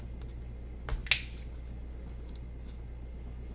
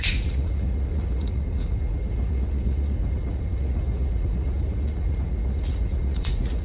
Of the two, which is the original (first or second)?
first